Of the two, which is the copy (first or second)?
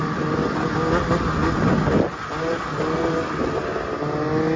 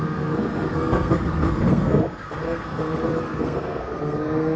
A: second